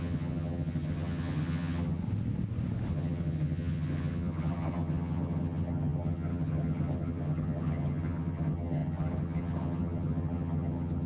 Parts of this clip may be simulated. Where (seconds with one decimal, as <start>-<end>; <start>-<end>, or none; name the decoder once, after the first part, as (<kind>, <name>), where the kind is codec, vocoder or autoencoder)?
0.0-2.0 (vocoder, HiFi-GAN); 2.9-11.1